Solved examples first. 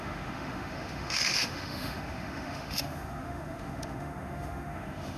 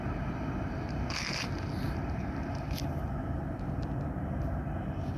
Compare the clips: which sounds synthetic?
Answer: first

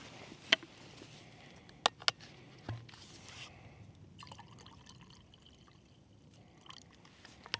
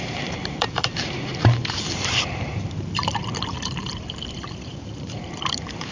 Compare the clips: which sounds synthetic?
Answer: second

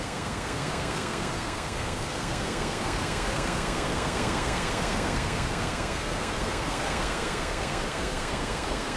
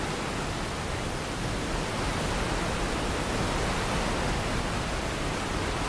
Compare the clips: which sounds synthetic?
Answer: first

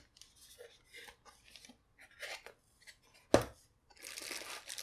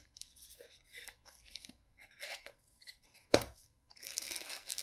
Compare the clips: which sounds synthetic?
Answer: second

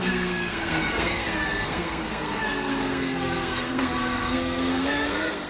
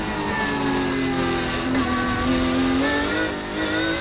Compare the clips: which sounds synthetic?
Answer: first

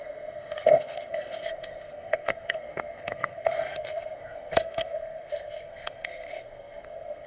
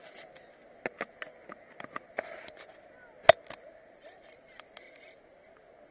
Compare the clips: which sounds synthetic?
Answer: first